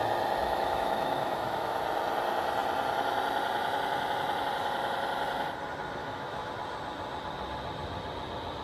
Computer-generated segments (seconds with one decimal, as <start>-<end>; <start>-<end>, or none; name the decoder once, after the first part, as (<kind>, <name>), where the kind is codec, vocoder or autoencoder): 0.4-1.8 (autoencoder, DAC-VAE); 6.0-6.5